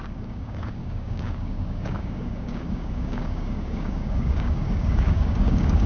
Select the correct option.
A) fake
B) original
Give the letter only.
A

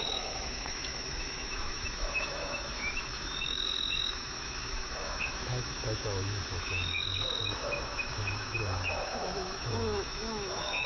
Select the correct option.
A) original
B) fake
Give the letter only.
B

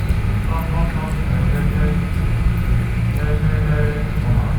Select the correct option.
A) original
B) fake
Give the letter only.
A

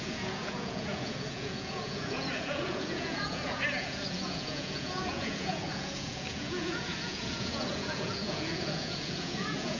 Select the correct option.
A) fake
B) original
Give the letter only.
A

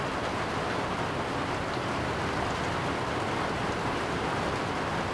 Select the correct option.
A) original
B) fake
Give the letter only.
A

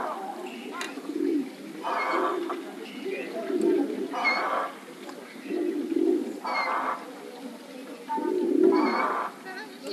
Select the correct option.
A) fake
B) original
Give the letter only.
B